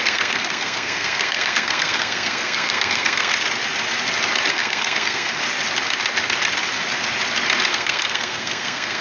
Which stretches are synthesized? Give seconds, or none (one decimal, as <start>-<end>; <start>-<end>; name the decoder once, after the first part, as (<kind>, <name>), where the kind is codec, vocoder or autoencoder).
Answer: 0.0-3.3 (codec, SNAC); 4.5-5.4; 7.7-9.0